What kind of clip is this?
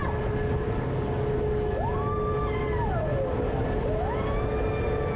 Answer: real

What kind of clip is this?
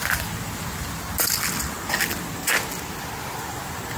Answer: real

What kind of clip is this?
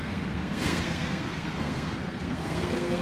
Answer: fake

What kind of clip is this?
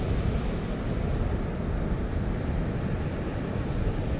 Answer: real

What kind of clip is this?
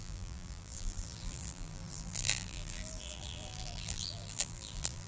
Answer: fake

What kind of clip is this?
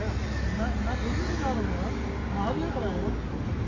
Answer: real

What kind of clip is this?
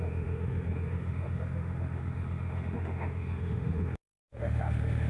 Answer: fake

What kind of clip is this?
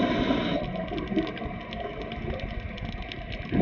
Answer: real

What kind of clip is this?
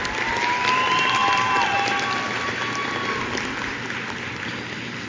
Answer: real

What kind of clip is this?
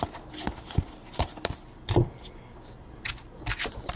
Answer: real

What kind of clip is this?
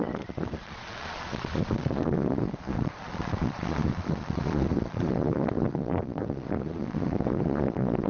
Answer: fake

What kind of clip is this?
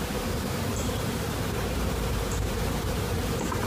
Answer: fake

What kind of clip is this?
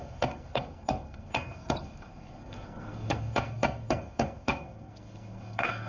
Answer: fake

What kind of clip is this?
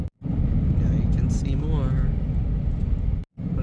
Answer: real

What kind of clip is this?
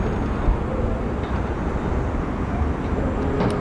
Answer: real